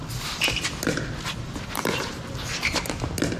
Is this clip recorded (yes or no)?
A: yes